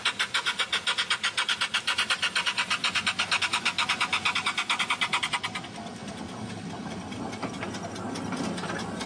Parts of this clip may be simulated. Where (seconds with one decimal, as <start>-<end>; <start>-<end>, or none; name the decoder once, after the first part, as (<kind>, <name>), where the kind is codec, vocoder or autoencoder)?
none